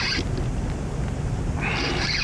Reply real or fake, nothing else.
real